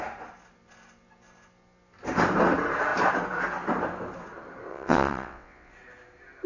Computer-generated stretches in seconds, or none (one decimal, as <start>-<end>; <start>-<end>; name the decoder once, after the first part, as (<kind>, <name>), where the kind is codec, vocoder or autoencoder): 4.7-5.7 (vocoder, WaveNeXt)